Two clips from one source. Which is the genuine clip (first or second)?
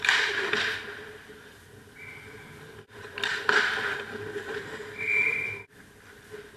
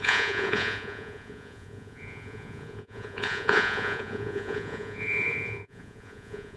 first